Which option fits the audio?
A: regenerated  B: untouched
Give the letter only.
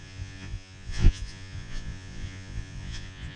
A